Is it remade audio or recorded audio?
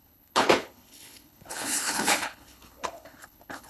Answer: remade